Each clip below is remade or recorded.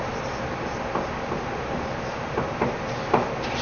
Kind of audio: recorded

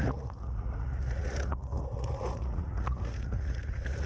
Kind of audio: remade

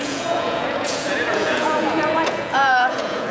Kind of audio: remade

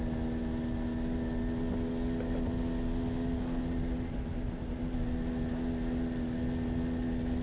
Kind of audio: recorded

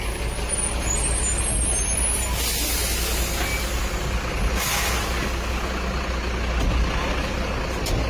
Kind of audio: recorded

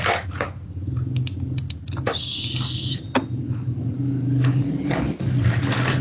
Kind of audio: recorded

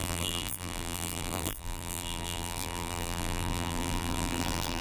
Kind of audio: remade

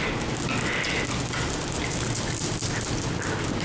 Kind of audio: recorded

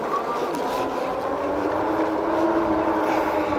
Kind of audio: recorded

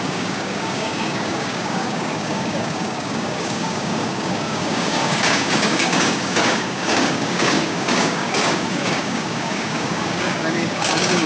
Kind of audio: remade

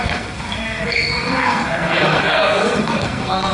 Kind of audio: remade